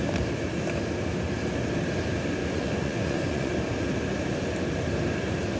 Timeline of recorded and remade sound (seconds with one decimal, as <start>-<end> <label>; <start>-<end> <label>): 0.0-2.4 recorded; 2.4-3.5 remade; 3.5-5.6 recorded